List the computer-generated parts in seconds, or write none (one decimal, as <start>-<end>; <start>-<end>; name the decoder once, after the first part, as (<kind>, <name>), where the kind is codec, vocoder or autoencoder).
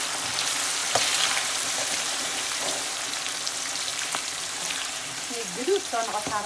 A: 0.8-3.0 (vocoder, BigVGAN v2); 3.9-6.5